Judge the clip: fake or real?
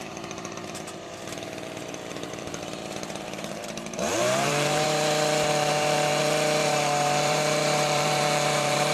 fake